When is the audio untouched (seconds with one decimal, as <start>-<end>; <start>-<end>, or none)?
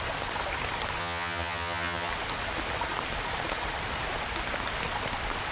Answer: 0.0-1.0; 2.1-5.5